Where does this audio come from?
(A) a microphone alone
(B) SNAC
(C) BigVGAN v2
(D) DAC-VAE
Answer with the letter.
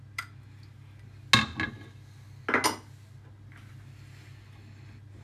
A